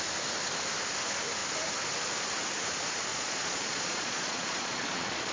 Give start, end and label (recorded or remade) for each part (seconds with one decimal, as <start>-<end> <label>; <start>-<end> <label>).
0.0-3.1 recorded; 3.1-5.3 remade

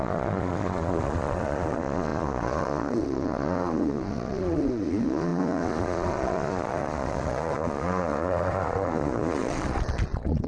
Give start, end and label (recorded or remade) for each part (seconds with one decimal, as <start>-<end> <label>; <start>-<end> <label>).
0.0-10.5 remade

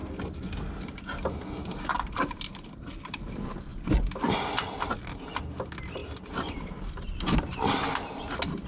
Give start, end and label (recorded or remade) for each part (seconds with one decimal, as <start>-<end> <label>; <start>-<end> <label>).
0.0-8.7 recorded

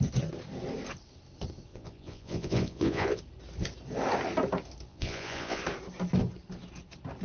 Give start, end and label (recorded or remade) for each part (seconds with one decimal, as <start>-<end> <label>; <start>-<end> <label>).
0.0-1.7 recorded; 1.7-3.2 remade; 3.2-4.9 recorded; 4.9-5.6 remade; 5.6-7.2 recorded

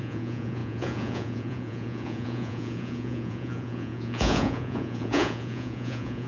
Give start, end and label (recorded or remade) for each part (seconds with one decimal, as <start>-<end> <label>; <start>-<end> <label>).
0.0-6.3 remade

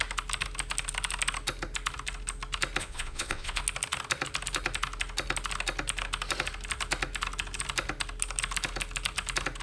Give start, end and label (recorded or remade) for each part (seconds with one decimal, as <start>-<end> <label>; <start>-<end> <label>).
0.0-2.8 recorded; 2.8-3.6 remade; 3.6-9.6 recorded